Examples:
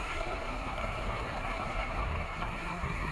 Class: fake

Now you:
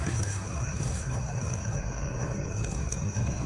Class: fake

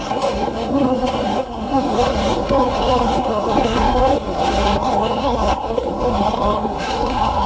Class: fake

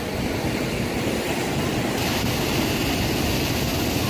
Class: real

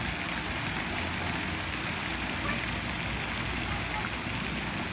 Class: real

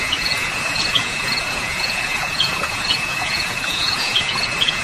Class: fake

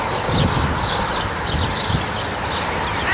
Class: real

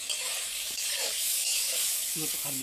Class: fake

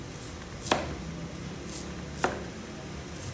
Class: real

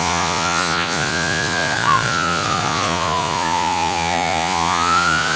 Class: fake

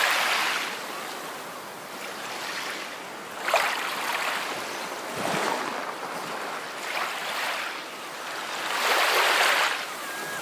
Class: real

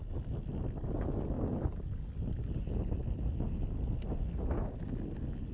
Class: real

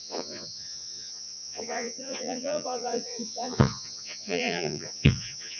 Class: fake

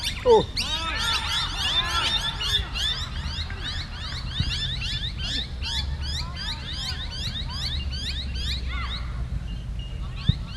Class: real